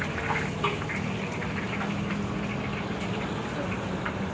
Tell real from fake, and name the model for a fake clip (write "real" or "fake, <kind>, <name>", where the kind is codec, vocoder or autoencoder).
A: real